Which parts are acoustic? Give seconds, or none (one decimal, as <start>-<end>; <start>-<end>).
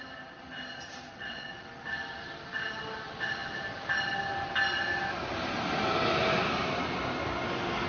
0.0-1.1; 1.7-7.9